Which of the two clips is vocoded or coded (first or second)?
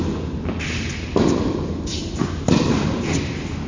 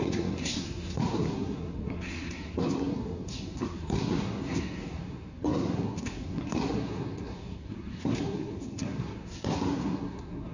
second